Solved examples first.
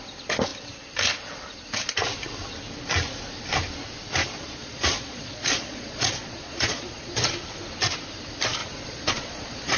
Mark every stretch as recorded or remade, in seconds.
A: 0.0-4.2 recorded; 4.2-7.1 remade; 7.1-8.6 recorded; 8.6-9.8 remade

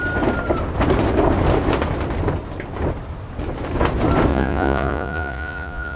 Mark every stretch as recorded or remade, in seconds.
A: 0.0-4.3 recorded; 4.3-6.0 remade

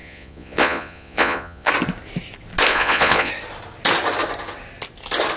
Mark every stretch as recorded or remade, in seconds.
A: 0.0-1.7 remade; 1.7-2.7 recorded; 2.7-3.3 remade; 3.3-5.4 recorded